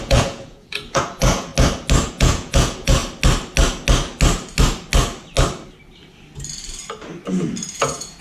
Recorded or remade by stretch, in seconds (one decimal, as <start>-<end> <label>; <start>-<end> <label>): 0.0-1.5 remade; 1.5-2.1 recorded; 2.1-3.0 remade; 3.0-7.7 recorded; 7.7-8.2 remade